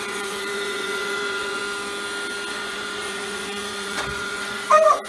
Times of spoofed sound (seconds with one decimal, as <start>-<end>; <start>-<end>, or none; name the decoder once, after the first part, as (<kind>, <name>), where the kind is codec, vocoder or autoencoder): 0.0-1.6 (vocoder, Vocos); 2.5-5.1